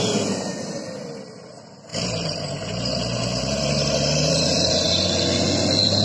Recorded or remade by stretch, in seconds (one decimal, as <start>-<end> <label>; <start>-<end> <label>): 0.0-1.9 recorded; 1.9-5.1 remade; 5.1-6.0 recorded